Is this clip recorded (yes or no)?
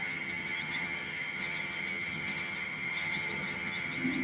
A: no